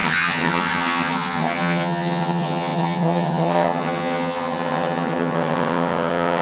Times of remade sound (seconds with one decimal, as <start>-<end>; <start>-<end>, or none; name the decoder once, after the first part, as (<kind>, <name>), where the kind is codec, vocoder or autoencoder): 0.0-6.4 (vocoder, HiFi-GAN)